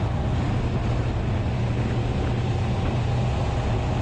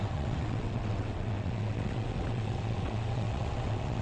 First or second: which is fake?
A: second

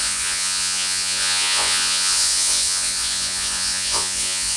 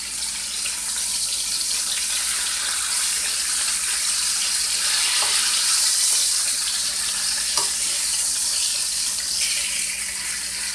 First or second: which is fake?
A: first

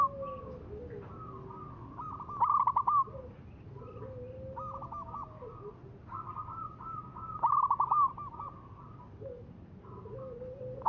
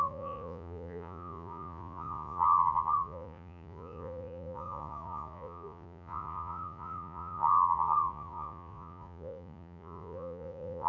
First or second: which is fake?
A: second